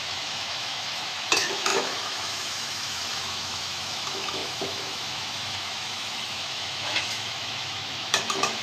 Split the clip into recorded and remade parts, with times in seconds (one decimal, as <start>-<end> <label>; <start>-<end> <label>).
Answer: 0.0-8.6 remade